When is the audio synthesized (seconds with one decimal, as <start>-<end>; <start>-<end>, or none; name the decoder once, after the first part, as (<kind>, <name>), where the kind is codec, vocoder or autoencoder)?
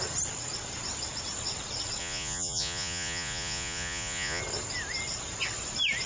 2.0-4.4 (vocoder, Vocos)